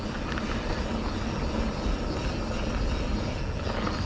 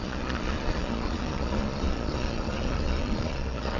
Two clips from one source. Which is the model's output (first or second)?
second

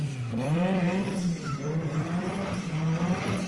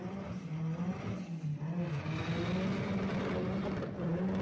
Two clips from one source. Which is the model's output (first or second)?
first